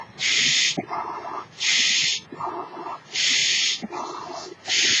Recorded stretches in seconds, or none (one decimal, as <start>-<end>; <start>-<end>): 0.0-5.0

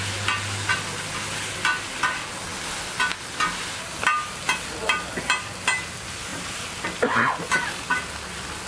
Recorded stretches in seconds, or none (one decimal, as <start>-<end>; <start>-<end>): 0.0-8.7

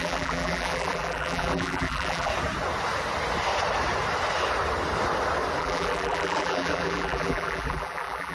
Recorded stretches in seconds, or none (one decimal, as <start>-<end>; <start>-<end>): 2.3-5.6

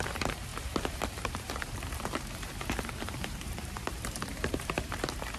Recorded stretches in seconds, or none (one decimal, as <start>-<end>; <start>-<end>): none

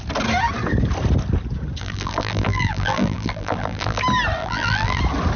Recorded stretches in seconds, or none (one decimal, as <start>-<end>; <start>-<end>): 0.0-1.8; 4.0-4.4; 5.0-5.4